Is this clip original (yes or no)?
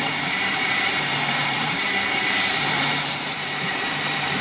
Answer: no